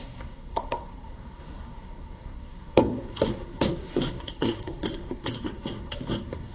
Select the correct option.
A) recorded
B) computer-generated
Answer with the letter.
B